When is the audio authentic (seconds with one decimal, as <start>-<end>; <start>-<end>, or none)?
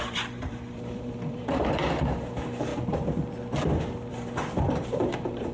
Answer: 2.7-4.1